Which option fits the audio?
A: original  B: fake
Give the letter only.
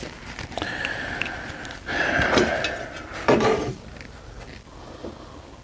A